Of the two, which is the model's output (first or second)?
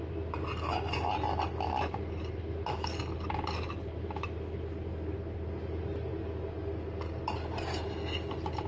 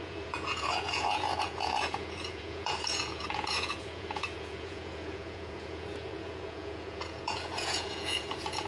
second